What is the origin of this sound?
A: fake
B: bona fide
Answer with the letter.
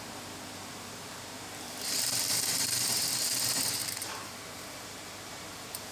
A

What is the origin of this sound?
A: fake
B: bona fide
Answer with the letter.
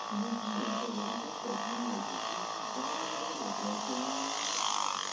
B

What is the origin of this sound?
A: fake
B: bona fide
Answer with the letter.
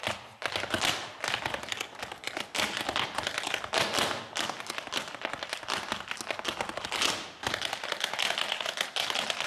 B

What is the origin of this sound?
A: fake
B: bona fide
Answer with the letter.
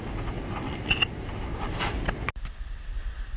B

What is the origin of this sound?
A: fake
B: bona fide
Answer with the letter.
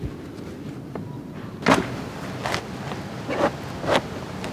B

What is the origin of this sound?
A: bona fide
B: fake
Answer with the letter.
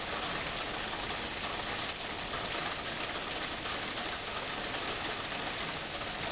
A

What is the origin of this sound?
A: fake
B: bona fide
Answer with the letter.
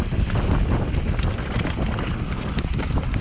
B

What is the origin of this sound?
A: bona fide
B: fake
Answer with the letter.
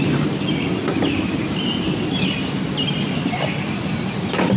A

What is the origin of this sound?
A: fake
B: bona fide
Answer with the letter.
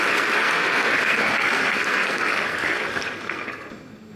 A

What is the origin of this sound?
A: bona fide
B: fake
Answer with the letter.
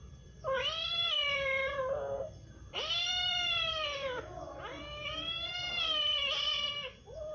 B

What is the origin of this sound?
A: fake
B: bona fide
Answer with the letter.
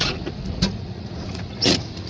A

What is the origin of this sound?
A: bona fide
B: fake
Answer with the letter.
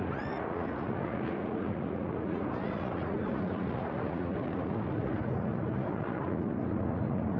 B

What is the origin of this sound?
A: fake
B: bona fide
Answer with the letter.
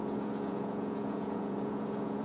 A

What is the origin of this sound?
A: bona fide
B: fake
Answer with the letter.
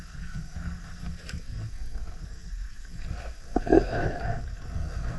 B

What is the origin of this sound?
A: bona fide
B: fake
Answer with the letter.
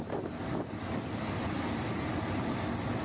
A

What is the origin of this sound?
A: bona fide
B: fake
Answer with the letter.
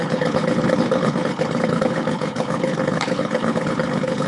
B